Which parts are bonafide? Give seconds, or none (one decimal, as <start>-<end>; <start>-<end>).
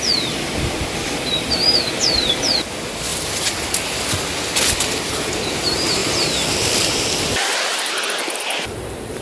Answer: 0.0-3.1; 3.7-6.0; 7.9-9.2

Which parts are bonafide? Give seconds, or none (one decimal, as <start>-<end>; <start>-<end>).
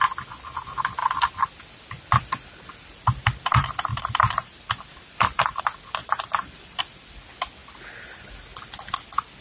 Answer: 0.0-3.9; 5.6-6.0; 6.8-9.4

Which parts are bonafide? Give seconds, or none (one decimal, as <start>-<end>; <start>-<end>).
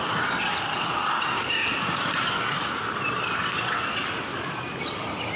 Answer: 0.0-5.4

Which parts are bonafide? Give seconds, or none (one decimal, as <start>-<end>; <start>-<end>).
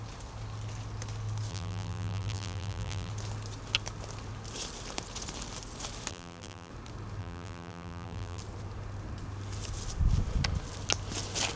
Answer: 0.0-1.5; 3.1-6.1; 6.7-7.2; 8.4-11.6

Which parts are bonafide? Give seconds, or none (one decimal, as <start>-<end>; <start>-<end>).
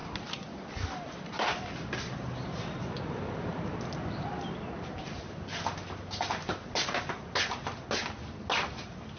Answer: 0.0-9.2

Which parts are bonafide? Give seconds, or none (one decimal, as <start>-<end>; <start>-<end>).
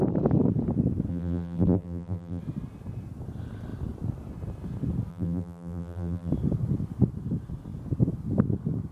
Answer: 0.0-1.1; 2.4-5.1; 6.3-8.9